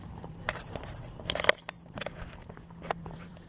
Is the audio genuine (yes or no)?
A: no